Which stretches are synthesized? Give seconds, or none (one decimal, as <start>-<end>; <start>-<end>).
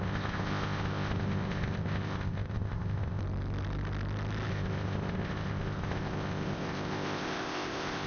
0.0-3.2; 4.5-8.1